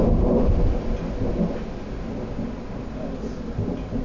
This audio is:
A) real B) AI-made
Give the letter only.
A